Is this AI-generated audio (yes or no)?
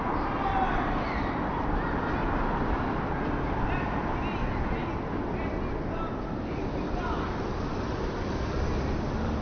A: no